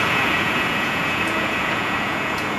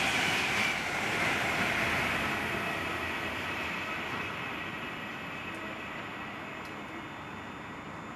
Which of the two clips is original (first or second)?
second